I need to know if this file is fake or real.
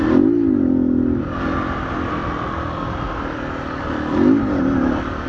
real